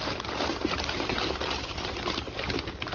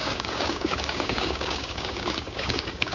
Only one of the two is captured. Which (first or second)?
first